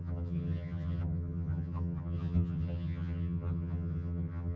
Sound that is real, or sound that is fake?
fake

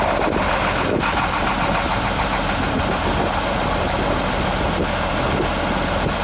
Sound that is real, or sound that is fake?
real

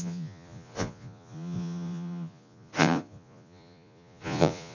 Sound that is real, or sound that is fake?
fake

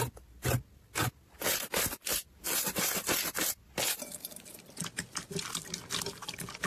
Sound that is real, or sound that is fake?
real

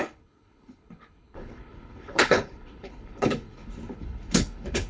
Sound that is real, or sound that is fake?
fake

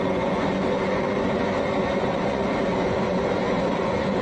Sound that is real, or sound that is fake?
fake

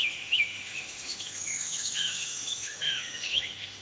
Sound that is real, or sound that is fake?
fake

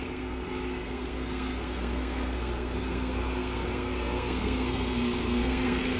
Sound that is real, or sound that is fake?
fake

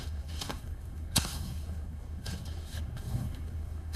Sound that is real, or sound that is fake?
fake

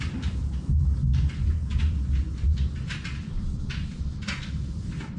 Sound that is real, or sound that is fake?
real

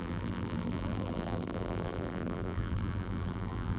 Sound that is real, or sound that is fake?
fake